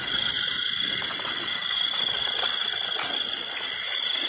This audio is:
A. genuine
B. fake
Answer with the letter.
B